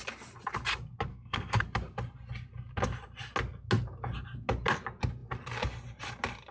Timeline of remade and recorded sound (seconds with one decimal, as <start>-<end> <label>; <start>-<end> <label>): 0.0-1.1 recorded; 1.1-1.6 remade; 1.6-6.5 recorded